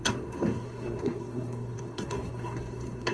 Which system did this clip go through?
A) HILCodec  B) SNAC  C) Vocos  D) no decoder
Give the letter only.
B